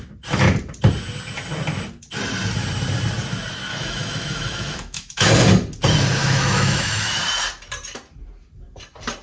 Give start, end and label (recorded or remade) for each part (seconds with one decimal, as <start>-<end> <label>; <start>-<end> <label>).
0.0-3.7 recorded; 3.7-5.3 remade; 5.3-6.2 recorded; 6.2-7.2 remade; 7.2-9.2 recorded

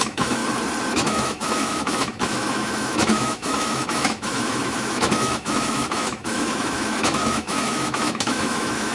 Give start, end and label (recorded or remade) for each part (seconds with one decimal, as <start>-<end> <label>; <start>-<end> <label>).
0.0-0.4 remade; 0.4-0.9 recorded; 0.9-8.9 remade

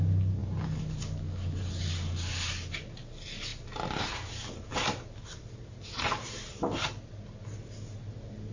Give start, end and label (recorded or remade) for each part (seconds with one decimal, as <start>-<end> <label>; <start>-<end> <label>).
0.0-8.5 recorded

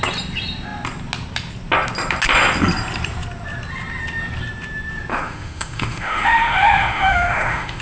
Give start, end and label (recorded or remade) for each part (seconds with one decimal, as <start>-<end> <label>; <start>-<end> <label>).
0.0-5.1 recorded; 5.1-7.8 remade

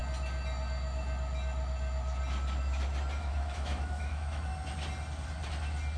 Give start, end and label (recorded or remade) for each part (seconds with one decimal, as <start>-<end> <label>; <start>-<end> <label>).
0.0-3.2 recorded; 3.2-4.5 remade; 4.5-6.0 recorded

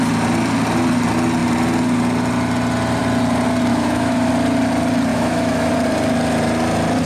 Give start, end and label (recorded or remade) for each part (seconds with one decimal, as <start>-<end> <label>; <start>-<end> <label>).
0.0-3.7 recorded; 3.7-4.3 remade; 4.3-5.1 recorded; 5.1-5.7 remade; 5.7-7.1 recorded

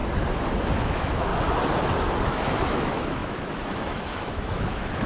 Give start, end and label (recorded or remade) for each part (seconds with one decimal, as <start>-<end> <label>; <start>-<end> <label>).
0.0-0.7 recorded; 0.7-1.3 remade; 1.3-2.3 recorded; 2.3-5.1 remade